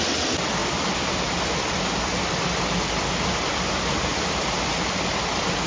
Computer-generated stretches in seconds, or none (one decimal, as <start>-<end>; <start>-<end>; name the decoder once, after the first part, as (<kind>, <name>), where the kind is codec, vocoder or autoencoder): 4.1-4.7 (vocoder, BigVGAN v2)